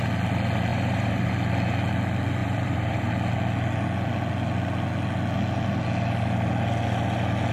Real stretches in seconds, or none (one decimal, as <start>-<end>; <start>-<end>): 0.0-0.7; 1.3-2.4; 3.1-7.5